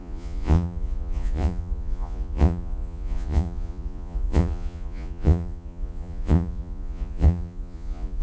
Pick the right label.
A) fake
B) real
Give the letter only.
A